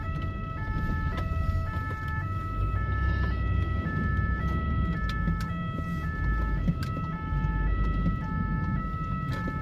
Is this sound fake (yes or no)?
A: no